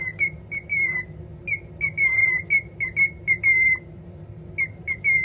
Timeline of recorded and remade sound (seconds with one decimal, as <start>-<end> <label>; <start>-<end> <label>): 0.0-5.2 recorded